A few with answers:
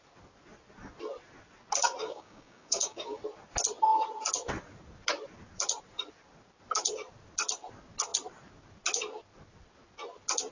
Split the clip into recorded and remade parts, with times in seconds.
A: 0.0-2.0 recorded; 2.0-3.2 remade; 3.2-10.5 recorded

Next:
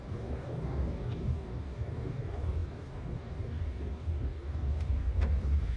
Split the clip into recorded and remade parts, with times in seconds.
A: 0.0-5.8 remade

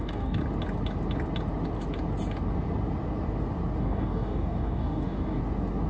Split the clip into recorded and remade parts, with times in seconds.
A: 0.0-0.4 remade; 0.4-3.8 recorded; 3.8-5.4 remade; 5.4-5.9 recorded

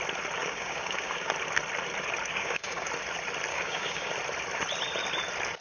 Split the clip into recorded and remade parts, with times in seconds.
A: 0.0-0.4 recorded; 0.4-1.3 remade; 1.3-2.3 recorded; 2.3-2.9 remade; 2.9-3.5 recorded; 3.5-4.1 remade; 4.1-5.6 recorded